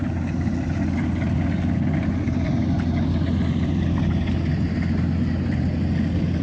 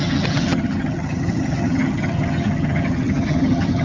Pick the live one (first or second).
first